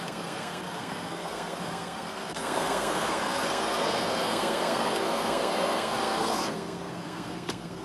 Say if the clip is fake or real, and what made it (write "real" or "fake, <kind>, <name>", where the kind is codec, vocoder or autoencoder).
fake, codec, SNAC